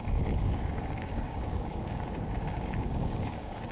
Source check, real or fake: fake